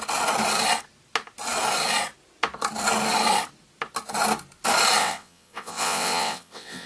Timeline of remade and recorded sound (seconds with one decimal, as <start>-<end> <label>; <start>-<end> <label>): 0.0-5.0 recorded; 5.0-6.9 remade